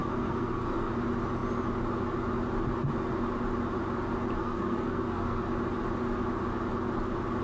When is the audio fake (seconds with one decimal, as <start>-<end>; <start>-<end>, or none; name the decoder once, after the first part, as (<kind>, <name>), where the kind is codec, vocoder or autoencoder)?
0.0-0.9 (codec, SNAC); 4.4-5.4

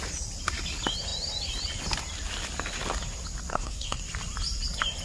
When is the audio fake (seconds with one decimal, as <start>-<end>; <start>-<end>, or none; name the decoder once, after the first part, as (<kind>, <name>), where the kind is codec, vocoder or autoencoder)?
3.5-4.0 (codec, SNAC)

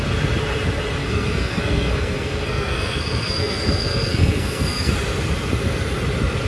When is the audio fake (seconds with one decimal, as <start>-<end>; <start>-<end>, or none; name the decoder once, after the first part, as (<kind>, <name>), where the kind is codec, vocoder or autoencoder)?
1.0-4.9 (codec, SNAC)

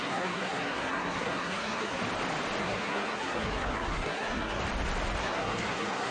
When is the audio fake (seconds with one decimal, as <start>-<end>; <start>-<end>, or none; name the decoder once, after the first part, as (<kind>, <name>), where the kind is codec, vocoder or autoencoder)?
0.0-2.0 (codec, SNAC); 2.6-4.6; 5.2-6.1